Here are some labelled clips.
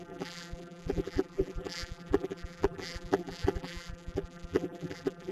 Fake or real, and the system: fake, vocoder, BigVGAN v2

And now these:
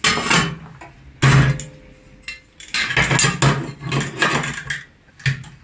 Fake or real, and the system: real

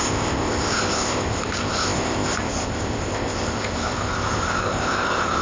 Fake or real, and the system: fake, codec, ZipCodec